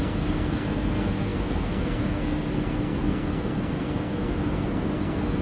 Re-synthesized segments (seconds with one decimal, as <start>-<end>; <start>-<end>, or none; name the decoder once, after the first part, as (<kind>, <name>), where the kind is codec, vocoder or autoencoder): 0.0-5.4 (codec, SNAC)